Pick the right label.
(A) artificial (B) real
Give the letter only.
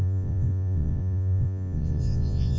A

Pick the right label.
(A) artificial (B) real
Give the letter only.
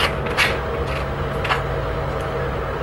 B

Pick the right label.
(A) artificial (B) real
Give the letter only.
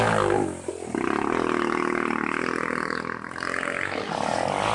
B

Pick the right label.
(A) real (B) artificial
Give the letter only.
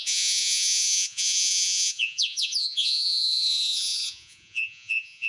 B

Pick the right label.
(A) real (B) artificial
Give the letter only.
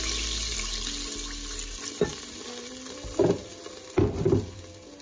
A